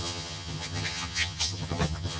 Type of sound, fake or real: fake